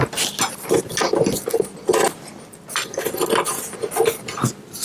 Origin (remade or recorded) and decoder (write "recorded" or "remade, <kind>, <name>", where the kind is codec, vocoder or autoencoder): recorded